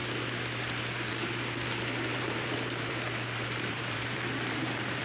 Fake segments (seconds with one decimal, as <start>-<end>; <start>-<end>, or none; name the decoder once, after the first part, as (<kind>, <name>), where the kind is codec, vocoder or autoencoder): 2.1-5.0 (vocoder, BigVGAN v2)